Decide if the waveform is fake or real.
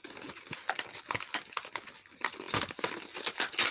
real